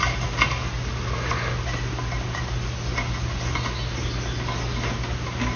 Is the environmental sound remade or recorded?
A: recorded